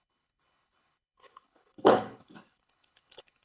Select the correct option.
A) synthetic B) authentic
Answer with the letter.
A